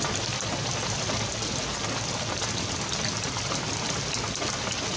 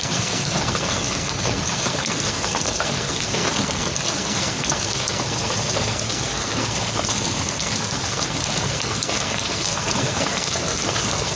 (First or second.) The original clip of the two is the first